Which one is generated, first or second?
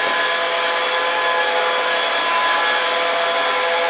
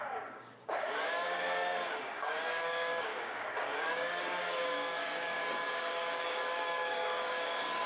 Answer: second